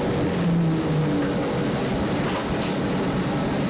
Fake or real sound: real